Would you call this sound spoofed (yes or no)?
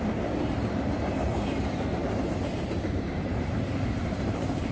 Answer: yes